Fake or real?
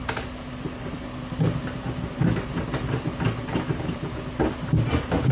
real